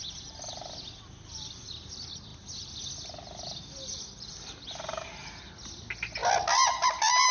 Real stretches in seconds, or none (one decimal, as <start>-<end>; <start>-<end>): 0.0-7.3